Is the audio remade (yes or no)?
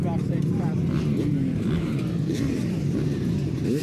yes